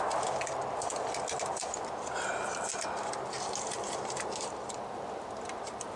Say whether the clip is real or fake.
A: real